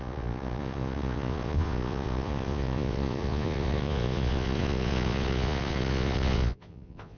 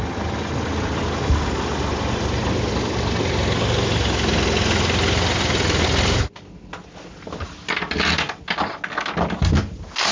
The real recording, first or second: second